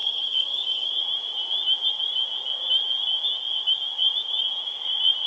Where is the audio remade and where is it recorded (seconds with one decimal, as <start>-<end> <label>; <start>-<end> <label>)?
0.0-0.9 remade; 0.9-5.3 recorded